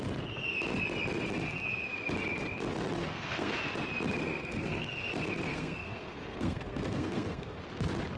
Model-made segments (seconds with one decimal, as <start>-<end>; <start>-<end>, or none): 3.0-3.5; 4.2-4.9; 5.5-7.6